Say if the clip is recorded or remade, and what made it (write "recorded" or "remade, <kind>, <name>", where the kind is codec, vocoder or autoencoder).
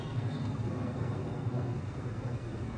remade, codec, SNAC